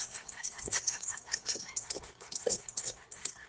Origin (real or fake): fake